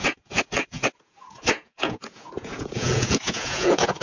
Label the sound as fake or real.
fake